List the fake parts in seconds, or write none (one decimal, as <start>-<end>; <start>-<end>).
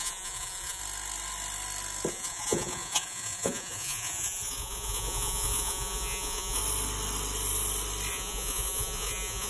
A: 0.0-0.8; 2.1-6.6; 8.1-9.5